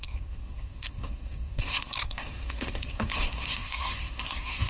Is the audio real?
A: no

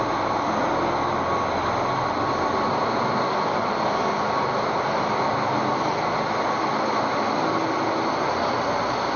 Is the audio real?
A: yes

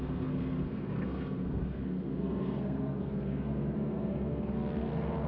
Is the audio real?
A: no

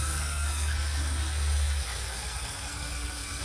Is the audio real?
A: no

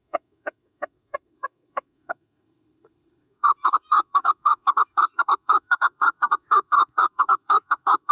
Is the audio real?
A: no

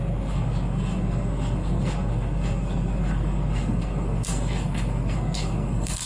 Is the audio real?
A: no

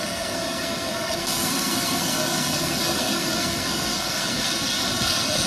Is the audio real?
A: no